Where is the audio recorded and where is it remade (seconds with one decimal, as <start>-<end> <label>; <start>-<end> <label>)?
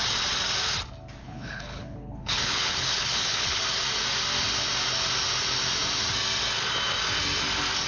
0.0-1.2 recorded; 1.2-3.6 remade; 3.6-7.9 recorded